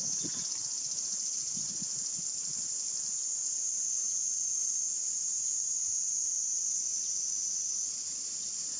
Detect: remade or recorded recorded